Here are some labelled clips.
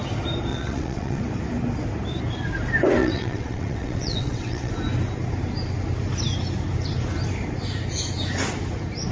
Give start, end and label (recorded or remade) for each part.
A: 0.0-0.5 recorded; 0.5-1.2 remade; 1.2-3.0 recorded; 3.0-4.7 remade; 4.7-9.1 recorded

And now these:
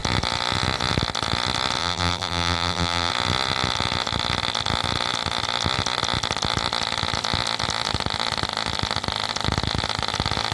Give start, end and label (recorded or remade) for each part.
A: 0.0-1.8 recorded; 1.8-3.1 remade; 3.1-10.5 recorded

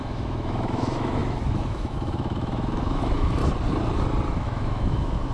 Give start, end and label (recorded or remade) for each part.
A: 0.0-3.4 remade; 3.4-4.3 recorded; 4.3-5.3 remade

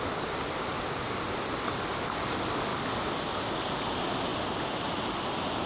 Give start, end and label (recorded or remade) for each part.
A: 0.0-5.7 recorded

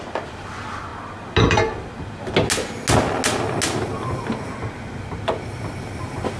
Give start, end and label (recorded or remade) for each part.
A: 0.0-0.9 remade; 0.9-4.7 recorded; 4.7-6.4 remade

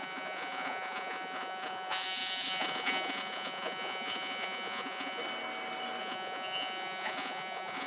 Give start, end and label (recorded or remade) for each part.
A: 0.0-5.2 remade; 5.2-6.0 recorded; 6.0-7.9 remade

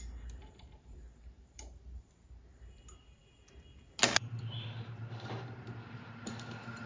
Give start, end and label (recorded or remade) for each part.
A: 0.0-0.4 recorded; 0.4-2.0 remade; 2.0-6.9 recorded

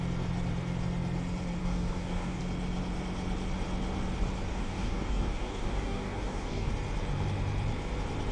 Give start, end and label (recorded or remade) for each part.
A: 0.0-1.6 recorded; 1.6-2.4 remade; 2.4-4.5 recorded; 4.5-6.7 remade; 6.7-8.3 recorded